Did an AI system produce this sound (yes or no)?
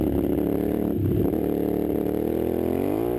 no